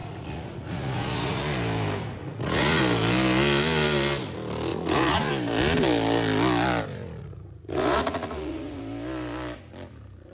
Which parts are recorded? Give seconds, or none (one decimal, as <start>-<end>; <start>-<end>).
1.4-2.2; 2.8-4.7; 5.3-6.9; 8.8-10.3